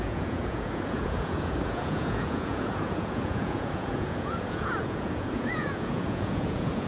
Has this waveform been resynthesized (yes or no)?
yes